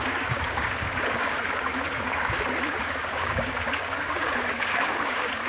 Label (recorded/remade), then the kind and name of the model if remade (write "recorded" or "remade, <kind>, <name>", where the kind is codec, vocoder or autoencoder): remade, codec, DAC